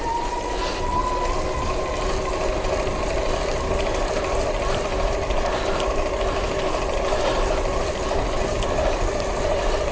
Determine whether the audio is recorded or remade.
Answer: recorded